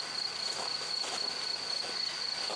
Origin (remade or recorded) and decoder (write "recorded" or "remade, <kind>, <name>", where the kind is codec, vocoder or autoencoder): recorded